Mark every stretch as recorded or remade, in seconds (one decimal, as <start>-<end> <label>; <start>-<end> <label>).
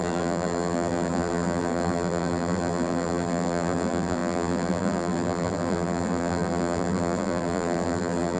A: 0.0-8.4 remade